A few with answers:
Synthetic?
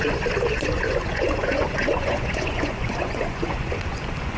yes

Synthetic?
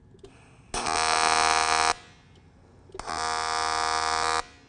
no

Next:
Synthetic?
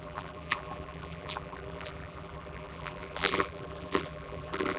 yes